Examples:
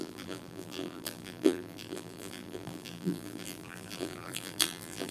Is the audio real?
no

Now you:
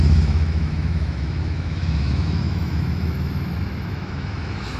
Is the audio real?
no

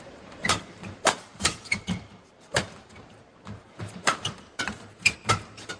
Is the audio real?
no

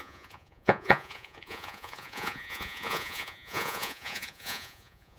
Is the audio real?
no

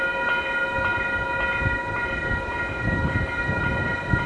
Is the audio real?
yes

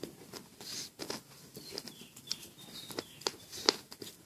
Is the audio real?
no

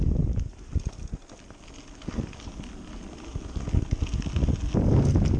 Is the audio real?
yes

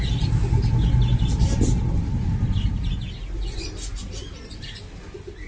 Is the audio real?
yes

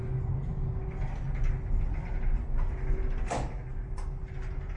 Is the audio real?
yes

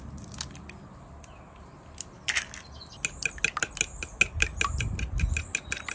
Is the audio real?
yes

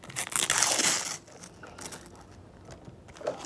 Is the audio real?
yes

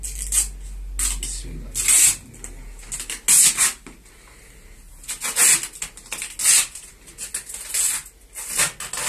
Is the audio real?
yes